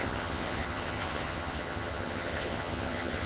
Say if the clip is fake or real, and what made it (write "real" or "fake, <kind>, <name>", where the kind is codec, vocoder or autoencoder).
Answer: fake, vocoder, HiFi-GAN